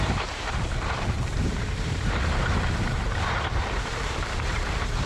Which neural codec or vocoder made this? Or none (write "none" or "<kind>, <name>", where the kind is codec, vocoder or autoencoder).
vocoder, BigVGAN v2